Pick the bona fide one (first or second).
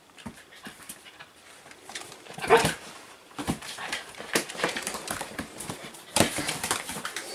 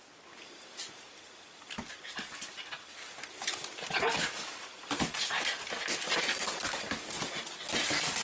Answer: second